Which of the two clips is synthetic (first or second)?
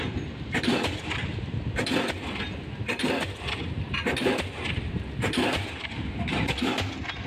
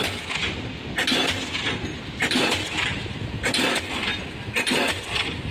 first